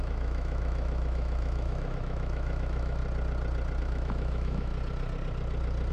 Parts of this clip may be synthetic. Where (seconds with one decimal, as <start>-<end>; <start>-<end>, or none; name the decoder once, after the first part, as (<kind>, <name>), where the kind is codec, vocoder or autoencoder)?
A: 0.0-3.0 (autoencoder, DAC-VAE); 3.8-4.7